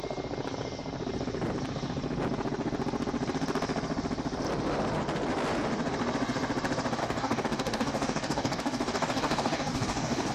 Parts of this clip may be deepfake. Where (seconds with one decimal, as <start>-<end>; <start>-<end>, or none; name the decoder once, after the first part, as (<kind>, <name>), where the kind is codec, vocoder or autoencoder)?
7.0-10.3 (codec, DAC)